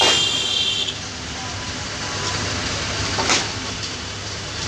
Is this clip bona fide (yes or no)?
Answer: yes